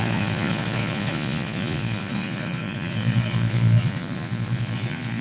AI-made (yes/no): yes